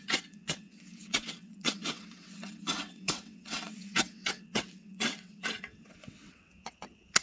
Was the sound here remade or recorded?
remade